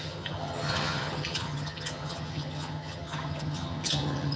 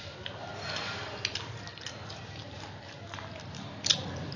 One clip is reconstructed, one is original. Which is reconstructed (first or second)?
first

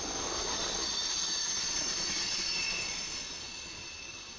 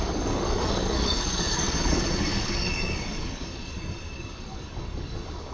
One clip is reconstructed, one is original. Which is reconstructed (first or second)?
second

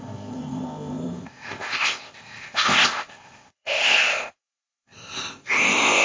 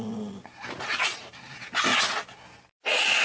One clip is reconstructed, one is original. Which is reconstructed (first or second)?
first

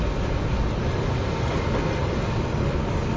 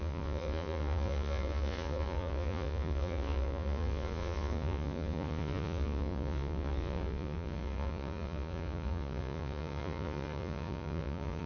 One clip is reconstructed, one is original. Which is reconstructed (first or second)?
second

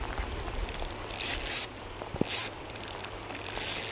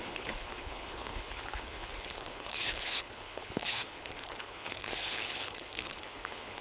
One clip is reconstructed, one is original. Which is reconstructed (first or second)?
second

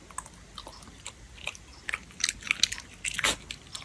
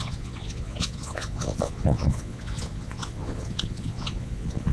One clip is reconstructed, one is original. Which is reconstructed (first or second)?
second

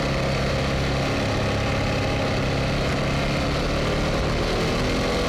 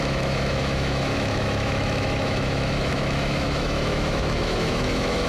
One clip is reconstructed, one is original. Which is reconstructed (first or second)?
second